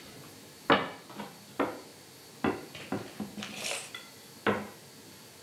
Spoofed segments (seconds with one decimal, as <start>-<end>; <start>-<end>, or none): none

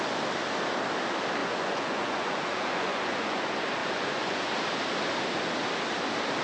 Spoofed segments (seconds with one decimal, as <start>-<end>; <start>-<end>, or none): 1.4-3.4; 3.8-4.5

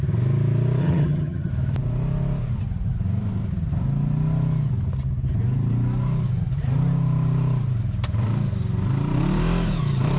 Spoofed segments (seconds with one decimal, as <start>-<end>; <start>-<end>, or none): 0.8-1.5

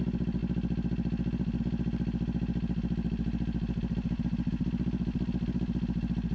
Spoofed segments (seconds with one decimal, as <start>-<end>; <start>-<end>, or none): none

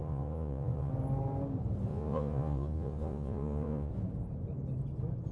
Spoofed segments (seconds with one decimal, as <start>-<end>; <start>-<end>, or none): 0.0-0.9; 1.9-3.9

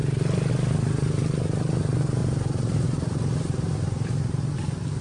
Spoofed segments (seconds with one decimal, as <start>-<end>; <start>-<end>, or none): 0.0-0.5; 2.2-4.4